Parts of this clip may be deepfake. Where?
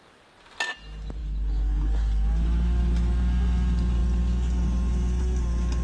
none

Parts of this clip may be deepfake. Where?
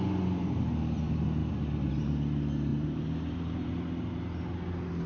2.7-4.4 (vocoder, BigVGAN v2)